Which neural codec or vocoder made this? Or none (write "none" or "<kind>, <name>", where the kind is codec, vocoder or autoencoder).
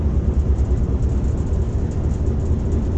none